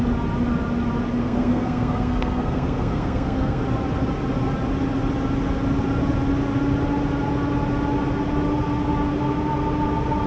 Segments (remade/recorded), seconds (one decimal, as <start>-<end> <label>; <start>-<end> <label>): 0.0-1.2 recorded; 1.2-3.6 remade; 3.6-10.3 recorded